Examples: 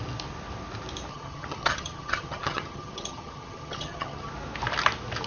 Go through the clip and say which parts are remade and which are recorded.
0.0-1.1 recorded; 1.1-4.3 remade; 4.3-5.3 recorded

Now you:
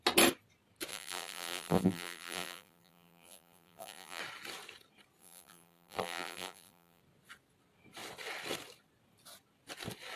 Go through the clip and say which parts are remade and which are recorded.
0.0-0.9 recorded; 0.9-4.2 remade; 4.2-5.2 recorded; 5.2-7.0 remade; 7.0-10.2 recorded

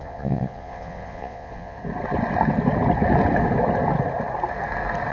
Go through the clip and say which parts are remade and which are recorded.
0.0-1.8 remade; 1.8-5.1 recorded

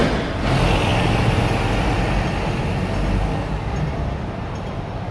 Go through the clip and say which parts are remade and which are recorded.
0.0-5.1 recorded

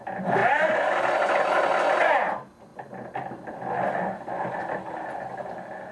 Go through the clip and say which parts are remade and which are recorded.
0.0-5.9 recorded

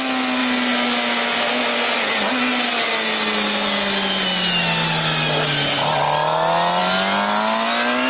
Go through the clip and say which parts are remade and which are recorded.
0.0-8.1 recorded

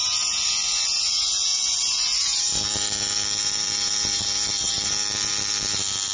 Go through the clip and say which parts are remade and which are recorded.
0.0-6.1 remade